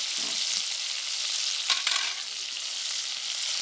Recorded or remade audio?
recorded